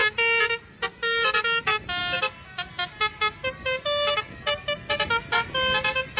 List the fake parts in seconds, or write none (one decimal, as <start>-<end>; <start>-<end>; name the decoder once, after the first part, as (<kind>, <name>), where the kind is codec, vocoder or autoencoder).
none